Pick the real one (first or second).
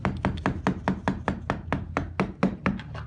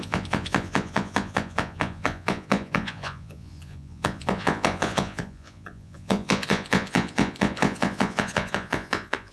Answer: first